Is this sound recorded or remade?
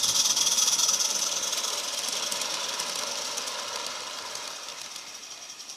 remade